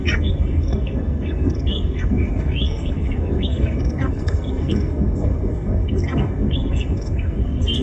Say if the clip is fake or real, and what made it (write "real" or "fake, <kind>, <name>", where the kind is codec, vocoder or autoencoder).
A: fake, codec, SNAC